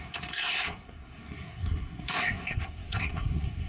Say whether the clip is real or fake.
fake